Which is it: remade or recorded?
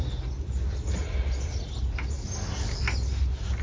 recorded